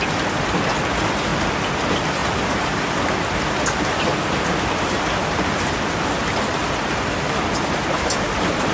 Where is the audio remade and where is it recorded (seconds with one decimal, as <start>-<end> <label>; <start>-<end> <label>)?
0.0-2.2 recorded; 2.2-3.0 remade; 3.0-4.2 recorded; 4.2-5.2 remade; 5.2-8.7 recorded